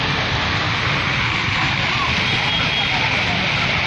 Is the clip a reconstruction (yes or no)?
no